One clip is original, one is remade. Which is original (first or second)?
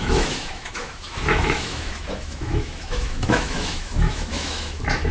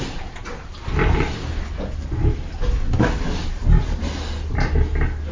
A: second